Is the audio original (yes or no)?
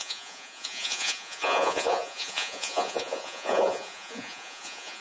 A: no